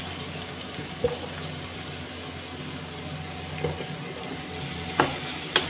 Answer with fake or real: real